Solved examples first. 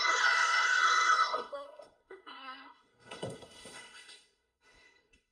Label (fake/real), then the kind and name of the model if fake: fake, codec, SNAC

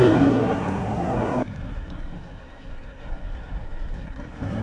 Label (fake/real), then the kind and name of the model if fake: fake, codec, SNAC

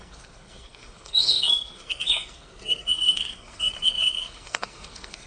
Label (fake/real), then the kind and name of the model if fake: fake, codec, SNAC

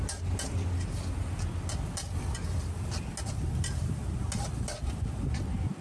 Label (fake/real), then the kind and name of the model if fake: real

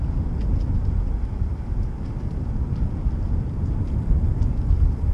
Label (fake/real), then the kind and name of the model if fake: real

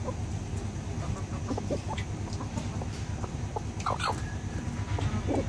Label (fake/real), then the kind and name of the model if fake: real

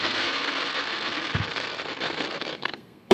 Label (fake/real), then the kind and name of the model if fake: fake, codec, SNAC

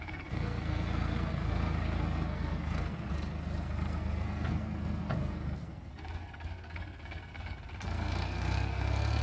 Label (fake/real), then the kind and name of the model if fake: fake, codec, SNAC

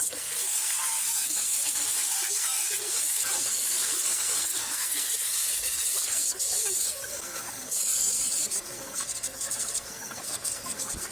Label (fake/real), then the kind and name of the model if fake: fake, codec, SNAC